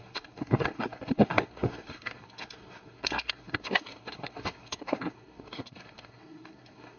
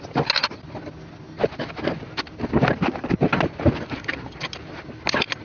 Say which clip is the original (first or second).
second